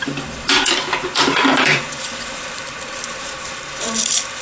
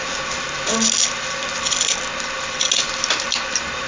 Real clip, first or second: second